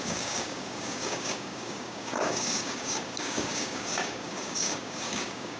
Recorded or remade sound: remade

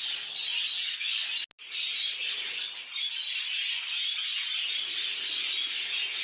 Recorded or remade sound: recorded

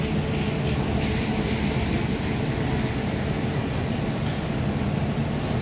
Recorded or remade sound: recorded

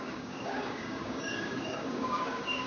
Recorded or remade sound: remade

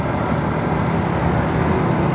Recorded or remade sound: recorded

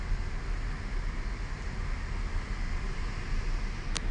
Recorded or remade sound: recorded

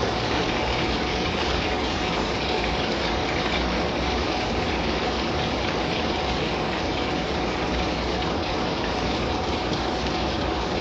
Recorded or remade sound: remade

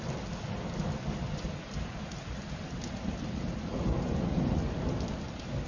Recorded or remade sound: recorded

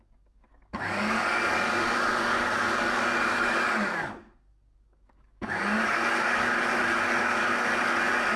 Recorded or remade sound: remade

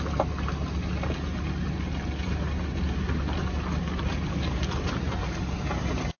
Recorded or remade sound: recorded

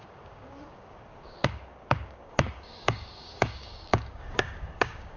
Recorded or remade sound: remade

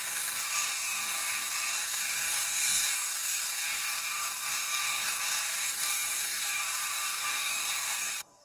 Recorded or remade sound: remade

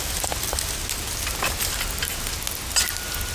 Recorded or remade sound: recorded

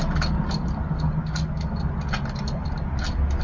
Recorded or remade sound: recorded